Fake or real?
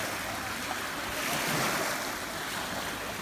real